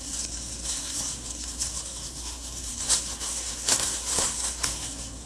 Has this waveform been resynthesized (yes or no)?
yes